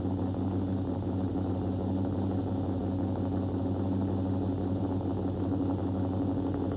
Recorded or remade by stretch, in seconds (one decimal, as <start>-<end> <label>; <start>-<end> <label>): 0.0-6.8 recorded